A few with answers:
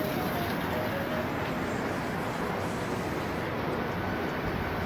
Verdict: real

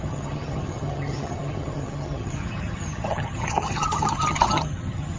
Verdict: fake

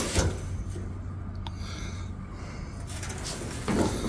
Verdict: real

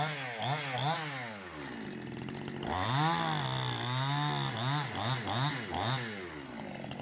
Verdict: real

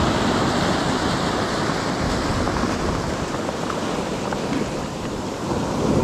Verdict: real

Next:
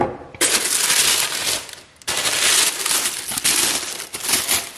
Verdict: real